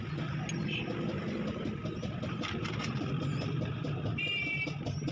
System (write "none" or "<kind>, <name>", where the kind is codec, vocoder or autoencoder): none